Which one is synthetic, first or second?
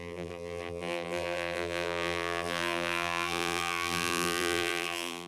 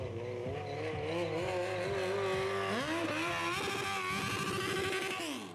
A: first